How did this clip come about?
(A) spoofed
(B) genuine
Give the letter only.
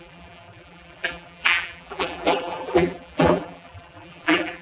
A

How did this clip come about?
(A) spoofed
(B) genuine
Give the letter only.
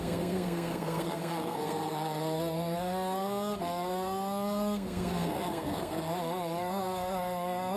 A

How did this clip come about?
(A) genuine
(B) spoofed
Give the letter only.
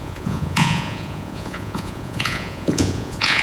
B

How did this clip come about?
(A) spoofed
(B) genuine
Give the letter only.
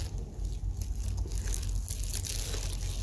B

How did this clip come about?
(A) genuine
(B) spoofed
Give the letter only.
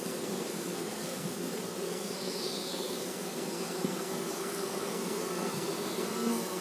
B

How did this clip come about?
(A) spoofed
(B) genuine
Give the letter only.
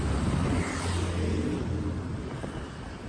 B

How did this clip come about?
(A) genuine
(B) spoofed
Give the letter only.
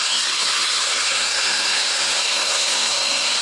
B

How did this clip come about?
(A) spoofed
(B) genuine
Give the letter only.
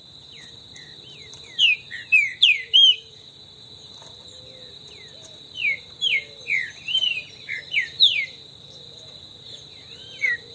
A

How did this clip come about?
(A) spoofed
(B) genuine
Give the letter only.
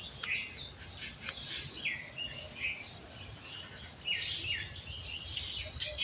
B